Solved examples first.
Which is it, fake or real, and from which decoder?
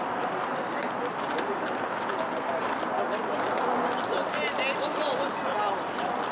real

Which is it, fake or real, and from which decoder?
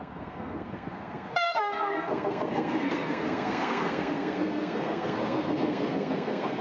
fake, codec, SNAC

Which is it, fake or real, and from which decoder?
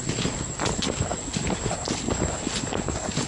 real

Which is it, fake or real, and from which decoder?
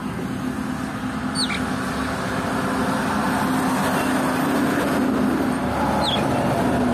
real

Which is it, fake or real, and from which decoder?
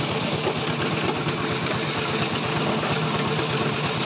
real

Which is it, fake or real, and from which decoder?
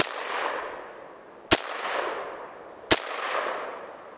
real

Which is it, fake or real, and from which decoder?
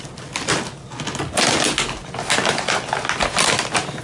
real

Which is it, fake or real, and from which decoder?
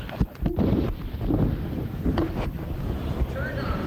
real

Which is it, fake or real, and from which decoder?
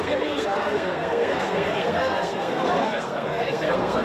fake, codec, SNAC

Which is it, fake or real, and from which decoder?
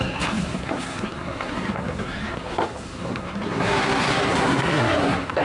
fake, codec, SNAC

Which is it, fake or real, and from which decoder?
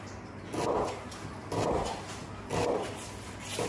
real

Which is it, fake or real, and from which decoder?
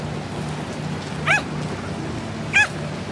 real